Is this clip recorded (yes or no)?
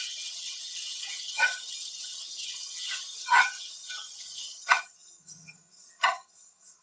no